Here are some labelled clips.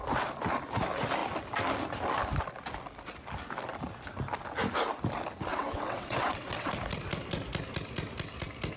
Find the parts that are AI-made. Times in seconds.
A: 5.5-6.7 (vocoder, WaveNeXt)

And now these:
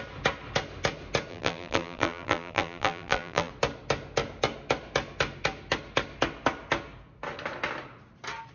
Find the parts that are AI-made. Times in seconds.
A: 1.3-3.5 (vocoder, BigVGAN v2)

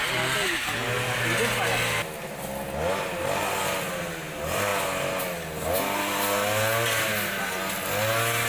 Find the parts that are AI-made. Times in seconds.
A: none

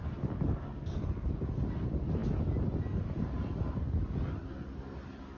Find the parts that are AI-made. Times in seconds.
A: none

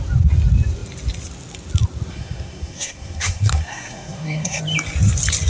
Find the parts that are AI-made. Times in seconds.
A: 2.1-4.6 (codec, SNAC)

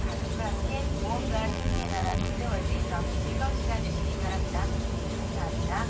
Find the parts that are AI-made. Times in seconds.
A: 1.5-2.3 (vocoder, BigVGAN v2)

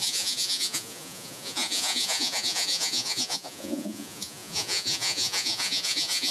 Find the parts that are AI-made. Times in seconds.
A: 0.0-6.3 (vocoder, Vocos)

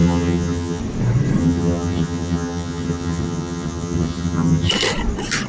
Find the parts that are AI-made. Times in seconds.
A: 0.0-0.8 (vocoder, HiFi-GAN); 1.4-4.7